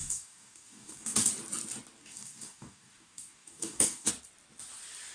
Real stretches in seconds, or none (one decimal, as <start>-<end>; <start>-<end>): 1.3-2.0; 4.1-5.1